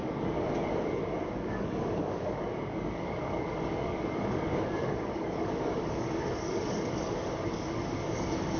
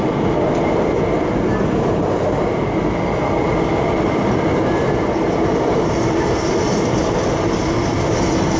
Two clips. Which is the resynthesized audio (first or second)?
first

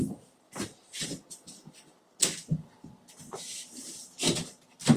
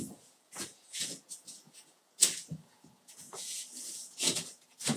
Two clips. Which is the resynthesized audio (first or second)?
second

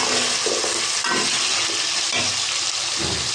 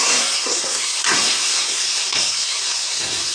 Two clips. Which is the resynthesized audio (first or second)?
second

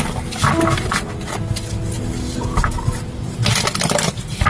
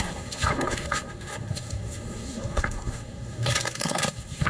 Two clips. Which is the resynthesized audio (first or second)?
second